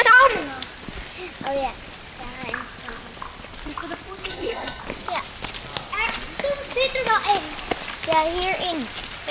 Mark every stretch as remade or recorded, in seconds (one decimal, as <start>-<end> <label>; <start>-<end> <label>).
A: 0.0-4.3 recorded; 4.3-4.8 remade; 4.8-9.3 recorded